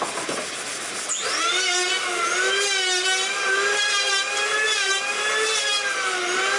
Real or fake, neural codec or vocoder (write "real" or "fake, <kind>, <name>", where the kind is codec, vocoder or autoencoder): real